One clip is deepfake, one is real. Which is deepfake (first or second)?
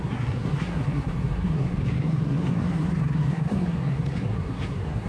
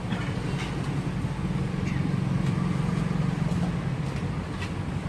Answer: first